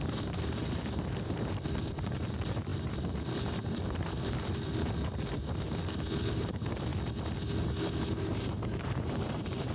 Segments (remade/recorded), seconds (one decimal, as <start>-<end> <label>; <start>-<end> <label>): 0.0-6.9 remade; 6.9-8.0 recorded; 8.0-9.7 remade